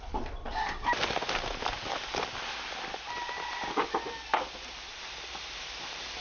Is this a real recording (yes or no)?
yes